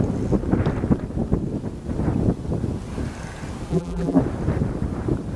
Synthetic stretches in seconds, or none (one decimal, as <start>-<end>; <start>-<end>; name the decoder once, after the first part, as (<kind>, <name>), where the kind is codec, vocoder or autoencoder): 3.7-4.2 (vocoder, BigVGAN v2)